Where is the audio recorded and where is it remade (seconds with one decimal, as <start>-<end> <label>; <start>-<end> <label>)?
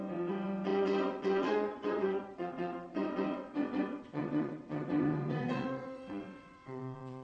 0.0-7.2 remade